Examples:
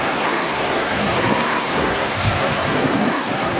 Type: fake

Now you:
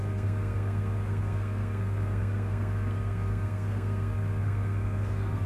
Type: fake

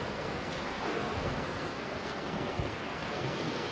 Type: fake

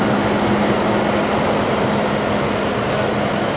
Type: real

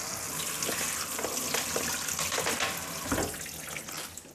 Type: real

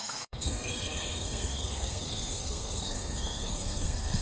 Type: fake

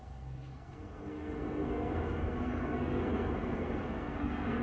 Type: fake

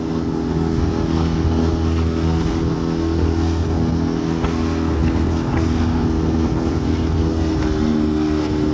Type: fake